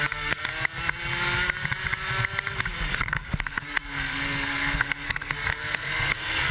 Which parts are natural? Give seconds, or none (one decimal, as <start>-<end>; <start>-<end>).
0.4-2.9